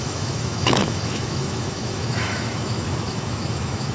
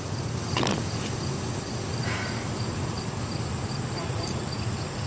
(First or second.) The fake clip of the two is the first